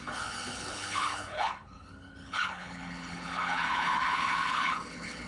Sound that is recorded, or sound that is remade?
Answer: remade